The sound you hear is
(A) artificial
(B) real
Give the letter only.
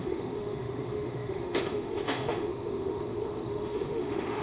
A